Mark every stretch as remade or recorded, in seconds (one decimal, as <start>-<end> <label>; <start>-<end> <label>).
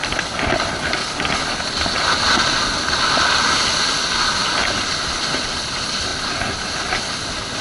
0.0-7.6 recorded